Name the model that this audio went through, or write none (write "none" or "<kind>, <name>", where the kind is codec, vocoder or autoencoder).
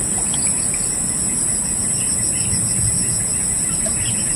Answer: none